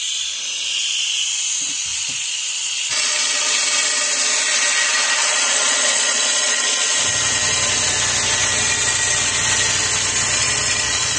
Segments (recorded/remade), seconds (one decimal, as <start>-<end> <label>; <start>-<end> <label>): 0.0-1.9 recorded; 1.9-3.3 remade; 3.3-5.2 recorded; 5.2-6.7 remade; 6.7-10.4 recorded; 10.4-11.2 remade